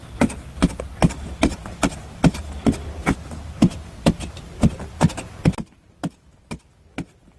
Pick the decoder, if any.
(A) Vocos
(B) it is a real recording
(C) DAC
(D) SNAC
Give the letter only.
B